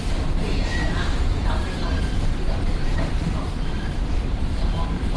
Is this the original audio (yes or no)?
no